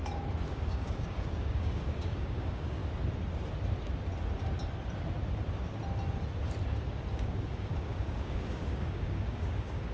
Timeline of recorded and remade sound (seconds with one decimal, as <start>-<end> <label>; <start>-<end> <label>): 0.0-0.5 recorded; 0.5-2.8 remade; 2.8-7.1 recorded; 7.1-9.9 remade